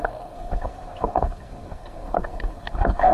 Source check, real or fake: fake